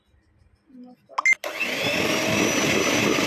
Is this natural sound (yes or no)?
yes